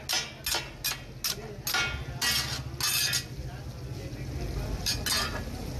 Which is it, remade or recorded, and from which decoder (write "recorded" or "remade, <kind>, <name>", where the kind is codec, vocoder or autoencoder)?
recorded